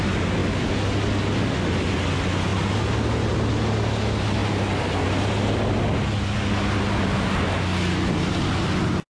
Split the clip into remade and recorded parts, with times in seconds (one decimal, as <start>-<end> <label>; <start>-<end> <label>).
0.0-9.1 recorded